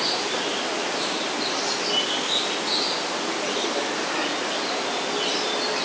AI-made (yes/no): no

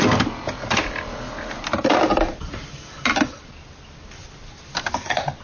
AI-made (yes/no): no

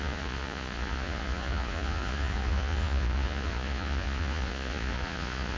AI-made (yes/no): yes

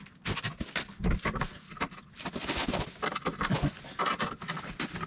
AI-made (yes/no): no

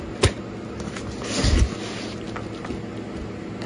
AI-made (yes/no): no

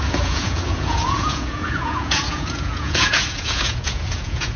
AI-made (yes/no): yes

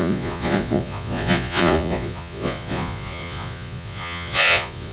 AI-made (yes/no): yes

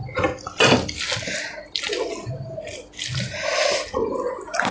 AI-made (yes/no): no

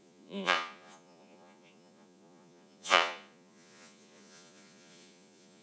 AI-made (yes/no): yes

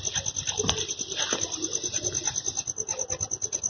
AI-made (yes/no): no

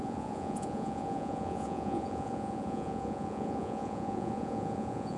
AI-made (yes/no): yes